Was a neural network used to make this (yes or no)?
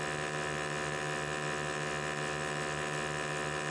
no